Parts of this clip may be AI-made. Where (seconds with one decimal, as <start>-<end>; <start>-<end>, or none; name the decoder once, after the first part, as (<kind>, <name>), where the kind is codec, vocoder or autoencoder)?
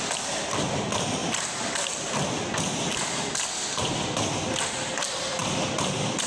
none